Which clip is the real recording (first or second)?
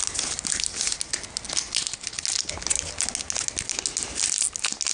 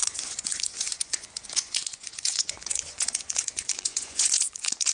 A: first